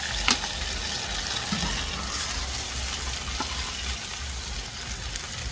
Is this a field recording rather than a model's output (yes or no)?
yes